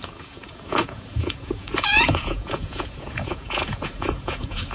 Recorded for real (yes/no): no